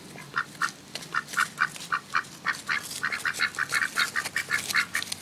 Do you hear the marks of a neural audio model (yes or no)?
no